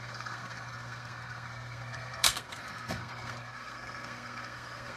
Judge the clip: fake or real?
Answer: fake